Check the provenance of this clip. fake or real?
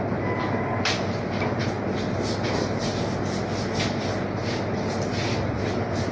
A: real